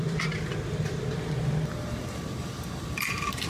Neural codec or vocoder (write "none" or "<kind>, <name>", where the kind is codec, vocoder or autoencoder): vocoder, BigVGAN v2